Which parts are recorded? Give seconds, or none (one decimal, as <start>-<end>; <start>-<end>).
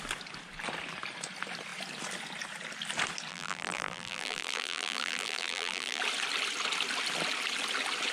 0.0-3.3; 6.0-8.1